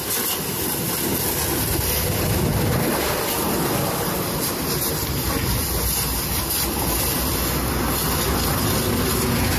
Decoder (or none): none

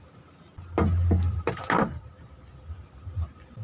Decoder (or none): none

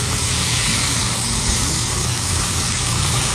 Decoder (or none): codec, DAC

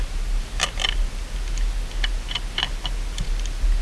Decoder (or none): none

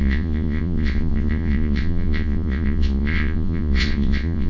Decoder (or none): vocoder, Vocos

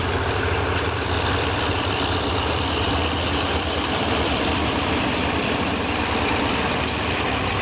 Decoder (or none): vocoder, BigVGAN v2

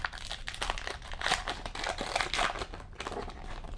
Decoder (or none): none